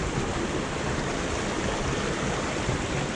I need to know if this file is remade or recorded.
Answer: recorded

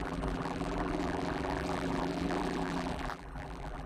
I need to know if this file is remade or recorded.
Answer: remade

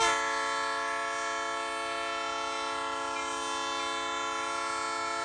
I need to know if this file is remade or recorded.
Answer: recorded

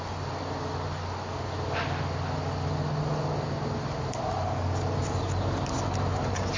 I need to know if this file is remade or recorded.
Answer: recorded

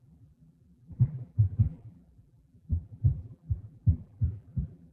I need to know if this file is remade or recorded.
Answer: remade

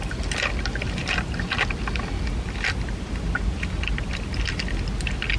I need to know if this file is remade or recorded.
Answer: remade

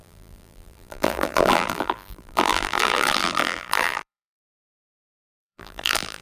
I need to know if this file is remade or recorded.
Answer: remade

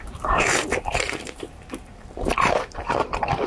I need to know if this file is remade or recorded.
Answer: remade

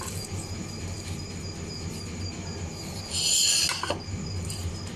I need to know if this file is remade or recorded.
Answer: recorded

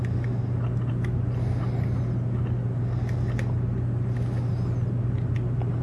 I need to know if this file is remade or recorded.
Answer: recorded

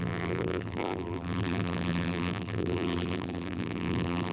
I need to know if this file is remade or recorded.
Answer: remade